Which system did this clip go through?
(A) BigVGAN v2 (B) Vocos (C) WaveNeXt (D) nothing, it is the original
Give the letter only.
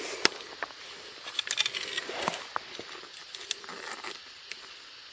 D